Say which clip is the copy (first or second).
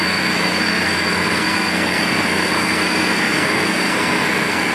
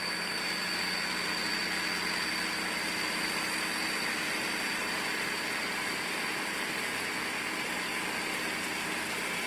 first